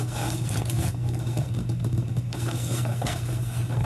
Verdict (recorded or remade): remade